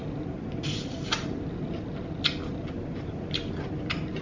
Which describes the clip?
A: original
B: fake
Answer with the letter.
A